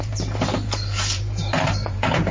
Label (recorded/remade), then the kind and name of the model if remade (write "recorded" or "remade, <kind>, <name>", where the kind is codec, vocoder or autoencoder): remade, vocoder, BigVGAN v2